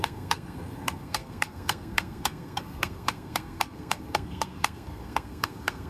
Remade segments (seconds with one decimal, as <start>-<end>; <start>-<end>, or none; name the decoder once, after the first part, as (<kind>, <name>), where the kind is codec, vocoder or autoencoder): 0.0-5.9 (codec, SNAC)